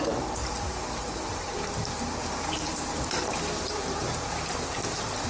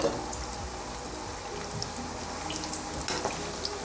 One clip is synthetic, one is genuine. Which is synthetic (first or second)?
first